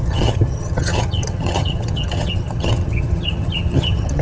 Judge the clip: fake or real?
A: fake